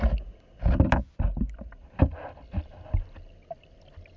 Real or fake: real